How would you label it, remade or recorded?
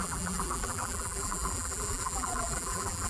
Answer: remade